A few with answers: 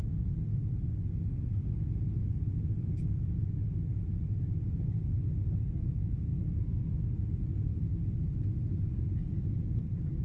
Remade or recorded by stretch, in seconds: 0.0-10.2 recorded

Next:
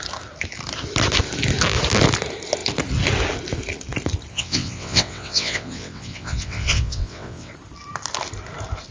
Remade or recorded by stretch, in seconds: 0.0-4.3 recorded; 4.3-7.5 remade; 7.5-8.9 recorded

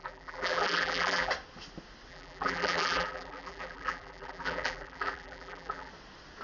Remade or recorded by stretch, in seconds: 0.0-1.3 remade; 1.3-2.1 recorded; 2.1-5.9 remade; 5.9-6.4 recorded

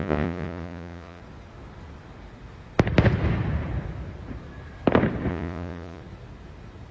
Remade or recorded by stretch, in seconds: 0.0-1.2 remade; 1.2-5.3 recorded; 5.3-6.0 remade; 6.0-6.9 recorded